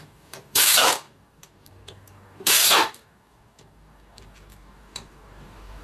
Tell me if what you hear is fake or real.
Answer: fake